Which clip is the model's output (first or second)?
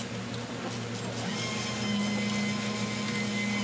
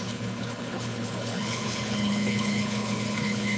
second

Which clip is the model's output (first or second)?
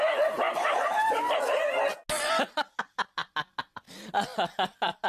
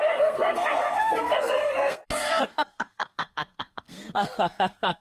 second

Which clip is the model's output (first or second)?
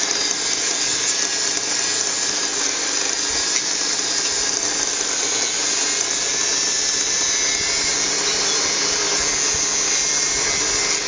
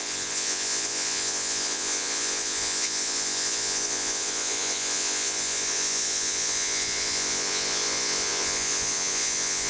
second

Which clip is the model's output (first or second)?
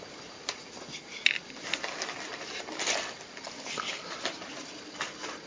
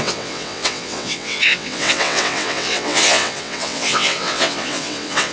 second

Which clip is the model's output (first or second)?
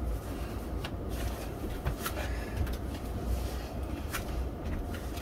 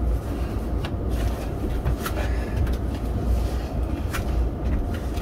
first